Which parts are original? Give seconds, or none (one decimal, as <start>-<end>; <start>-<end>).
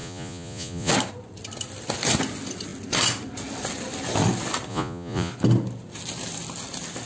0.9-4.7; 5.3-7.1